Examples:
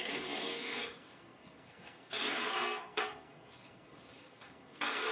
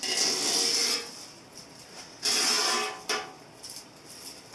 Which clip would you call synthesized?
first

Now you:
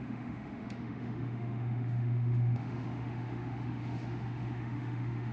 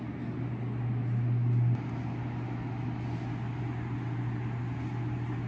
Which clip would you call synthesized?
first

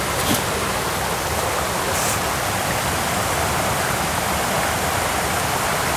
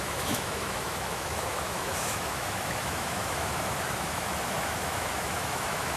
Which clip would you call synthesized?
second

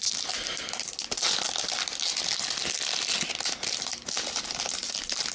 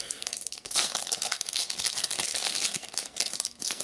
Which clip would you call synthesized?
second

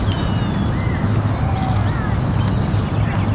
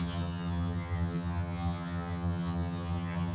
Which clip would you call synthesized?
second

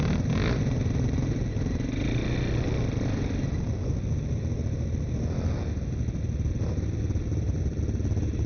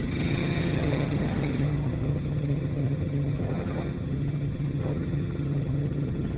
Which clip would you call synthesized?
second